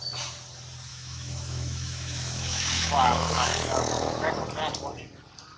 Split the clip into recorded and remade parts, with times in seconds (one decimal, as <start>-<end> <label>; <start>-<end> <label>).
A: 0.0-0.9 recorded; 0.9-4.3 remade; 4.3-5.6 recorded